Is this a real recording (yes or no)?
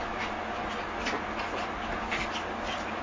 yes